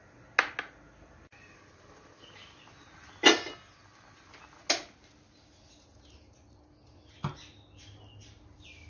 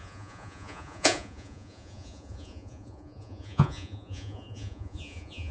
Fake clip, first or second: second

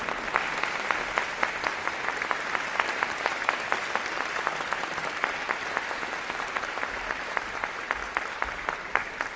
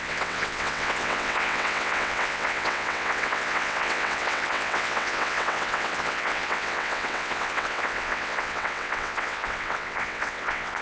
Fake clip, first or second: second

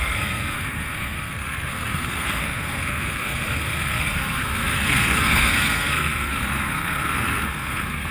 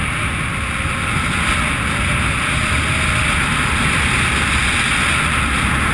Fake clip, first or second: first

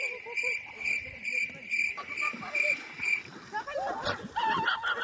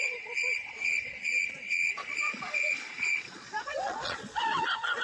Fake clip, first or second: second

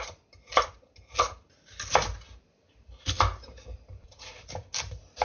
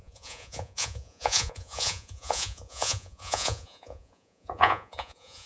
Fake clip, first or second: second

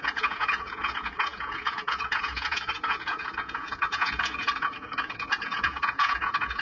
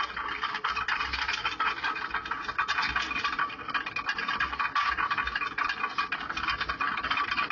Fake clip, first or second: first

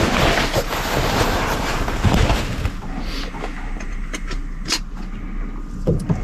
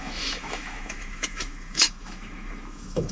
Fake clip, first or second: second